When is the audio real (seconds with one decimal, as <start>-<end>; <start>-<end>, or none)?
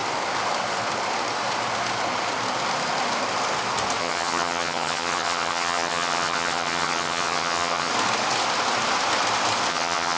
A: 0.0-4.0; 7.9-9.7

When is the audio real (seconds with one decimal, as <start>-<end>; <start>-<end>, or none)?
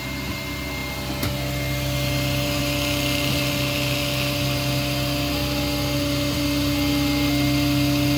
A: 0.0-8.2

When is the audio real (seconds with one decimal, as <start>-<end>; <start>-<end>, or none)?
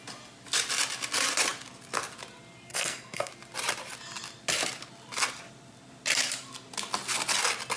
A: 0.0-2.7; 3.3-7.8